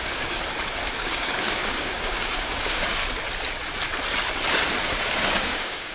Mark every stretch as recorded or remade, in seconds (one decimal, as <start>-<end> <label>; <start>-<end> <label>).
0.0-0.4 remade; 0.4-1.0 recorded; 1.0-3.0 remade; 3.0-4.8 recorded; 4.8-5.9 remade